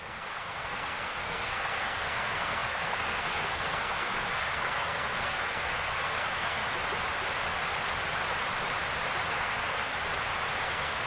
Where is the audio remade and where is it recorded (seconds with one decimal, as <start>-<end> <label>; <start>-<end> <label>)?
0.0-6.6 remade; 6.6-9.3 recorded; 9.3-9.9 remade; 9.9-10.6 recorded; 10.6-11.1 remade